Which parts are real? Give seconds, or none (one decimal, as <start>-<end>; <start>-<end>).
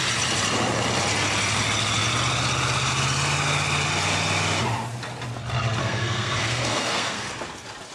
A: 0.0-5.8; 7.3-7.9